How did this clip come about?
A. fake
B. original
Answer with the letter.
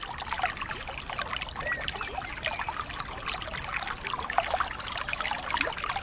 B